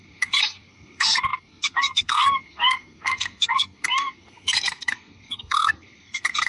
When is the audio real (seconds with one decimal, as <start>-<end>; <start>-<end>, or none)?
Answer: none